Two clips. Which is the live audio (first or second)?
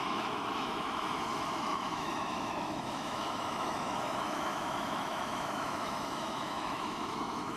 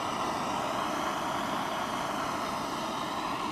second